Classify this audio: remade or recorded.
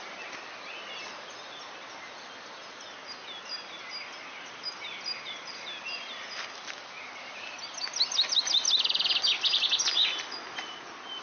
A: recorded